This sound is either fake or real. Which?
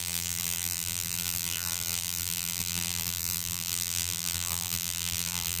fake